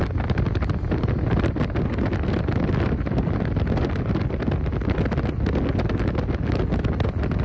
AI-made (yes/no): no